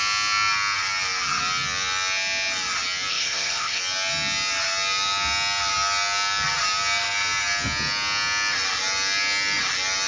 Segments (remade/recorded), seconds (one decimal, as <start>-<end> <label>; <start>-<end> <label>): 0.0-3.1 recorded; 3.1-3.8 remade; 3.8-10.1 recorded